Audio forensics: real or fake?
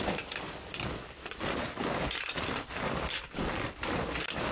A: real